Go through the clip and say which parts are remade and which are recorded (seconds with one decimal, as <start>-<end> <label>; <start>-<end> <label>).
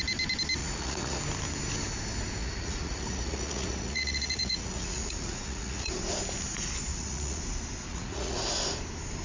0.0-0.6 recorded; 0.6-1.2 remade; 1.2-2.4 recorded; 2.4-6.0 remade; 6.0-6.9 recorded; 6.9-7.4 remade; 7.4-7.9 recorded; 7.9-8.4 remade; 8.4-9.2 recorded